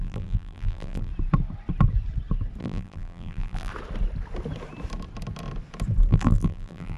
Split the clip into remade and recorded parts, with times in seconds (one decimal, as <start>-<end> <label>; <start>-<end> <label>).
0.0-1.1 remade; 1.1-2.6 recorded; 2.6-3.7 remade; 3.7-6.1 recorded; 6.1-7.0 remade